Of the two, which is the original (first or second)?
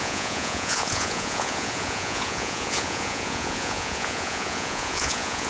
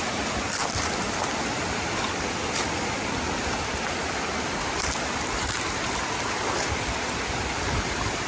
second